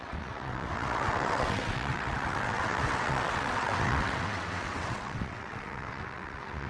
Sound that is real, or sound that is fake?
fake